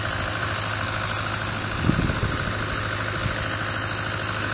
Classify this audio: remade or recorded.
recorded